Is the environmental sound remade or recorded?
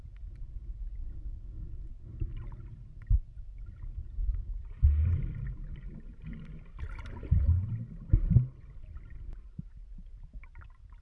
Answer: recorded